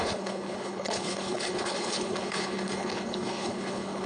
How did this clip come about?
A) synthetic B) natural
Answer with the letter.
A